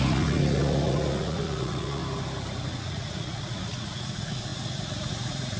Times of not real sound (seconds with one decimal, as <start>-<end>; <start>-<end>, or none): 0.0-2.0; 2.7-5.6